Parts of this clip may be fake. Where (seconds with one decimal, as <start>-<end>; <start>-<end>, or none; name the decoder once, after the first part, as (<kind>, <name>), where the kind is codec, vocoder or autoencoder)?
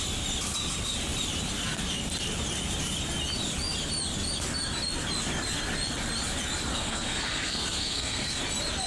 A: 6.7-8.4 (codec, SNAC)